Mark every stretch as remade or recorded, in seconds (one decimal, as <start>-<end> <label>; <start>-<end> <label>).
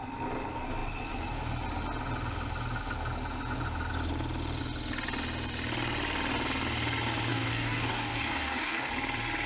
0.0-7.3 recorded; 7.3-8.9 remade; 8.9-9.5 recorded